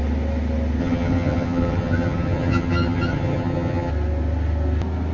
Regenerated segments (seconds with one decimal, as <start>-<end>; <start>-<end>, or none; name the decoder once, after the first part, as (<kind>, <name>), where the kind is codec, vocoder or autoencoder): 0.8-3.9 (vocoder, HiFi-GAN)